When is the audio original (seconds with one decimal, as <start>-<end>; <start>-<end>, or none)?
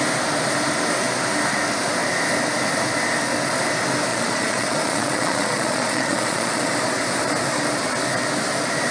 0.0-4.1; 6.7-8.9